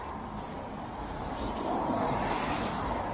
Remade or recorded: recorded